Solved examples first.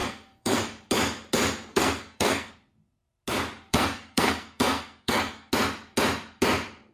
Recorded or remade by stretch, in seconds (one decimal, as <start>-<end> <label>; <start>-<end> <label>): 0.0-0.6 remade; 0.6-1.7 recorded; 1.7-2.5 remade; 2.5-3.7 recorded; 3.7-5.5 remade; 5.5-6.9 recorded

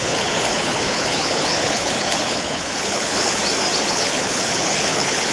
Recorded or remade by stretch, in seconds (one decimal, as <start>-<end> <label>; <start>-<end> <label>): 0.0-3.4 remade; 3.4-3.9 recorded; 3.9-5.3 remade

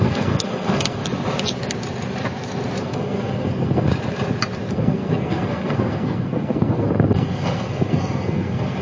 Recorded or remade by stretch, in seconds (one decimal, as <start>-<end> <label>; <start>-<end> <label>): 0.0-1.0 remade; 1.0-2.8 recorded; 2.8-3.9 remade; 3.9-4.7 recorded; 4.7-8.8 remade

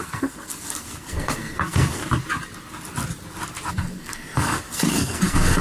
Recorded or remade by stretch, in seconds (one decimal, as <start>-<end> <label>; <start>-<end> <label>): 0.0-2.0 remade; 2.0-3.7 recorded; 3.7-5.6 remade

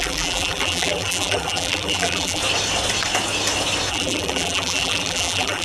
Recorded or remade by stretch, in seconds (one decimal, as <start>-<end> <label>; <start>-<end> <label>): 0.0-2.4 remade; 2.4-3.9 recorded; 3.9-5.6 remade